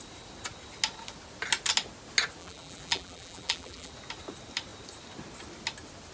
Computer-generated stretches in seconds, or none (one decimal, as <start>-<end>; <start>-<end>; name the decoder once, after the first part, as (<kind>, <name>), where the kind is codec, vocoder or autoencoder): 2.4-3.9 (vocoder, BigVGAN v2)